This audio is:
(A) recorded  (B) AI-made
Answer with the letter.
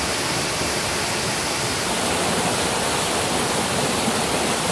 B